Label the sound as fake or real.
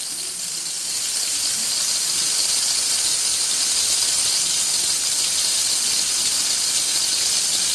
fake